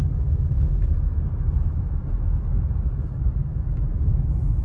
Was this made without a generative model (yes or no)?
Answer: no